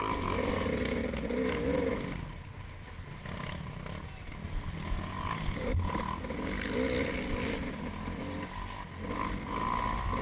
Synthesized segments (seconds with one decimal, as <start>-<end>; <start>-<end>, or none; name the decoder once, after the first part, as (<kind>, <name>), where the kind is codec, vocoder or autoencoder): none